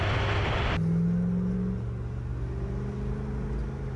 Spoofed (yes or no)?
no